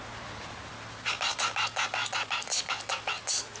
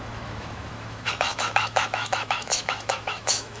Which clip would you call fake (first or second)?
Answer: second